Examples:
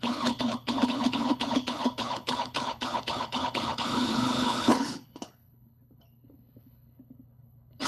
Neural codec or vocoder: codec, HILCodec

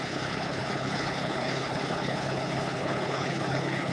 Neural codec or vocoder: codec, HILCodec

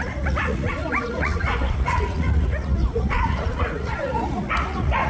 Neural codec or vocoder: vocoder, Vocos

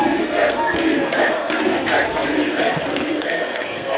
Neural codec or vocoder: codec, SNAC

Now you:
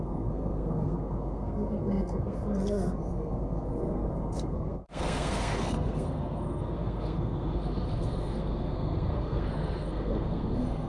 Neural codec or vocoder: codec, SNAC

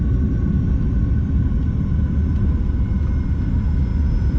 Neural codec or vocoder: none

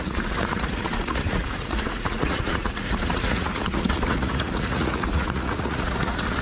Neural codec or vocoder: vocoder, Vocos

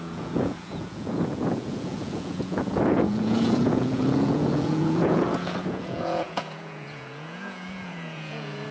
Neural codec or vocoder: vocoder, Vocos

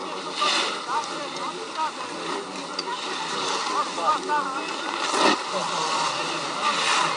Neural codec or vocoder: none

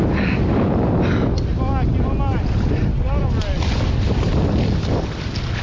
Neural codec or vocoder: none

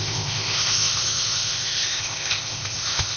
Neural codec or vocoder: codec, ZipCodec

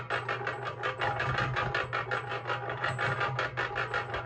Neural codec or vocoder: none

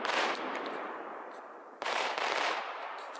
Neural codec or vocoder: vocoder, BigVGAN v2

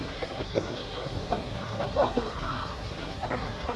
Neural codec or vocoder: codec, SNAC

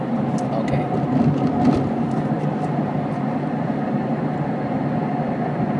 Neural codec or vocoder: none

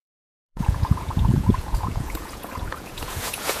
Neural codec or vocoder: vocoder, Vocos